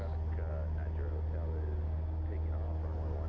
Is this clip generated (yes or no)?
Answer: no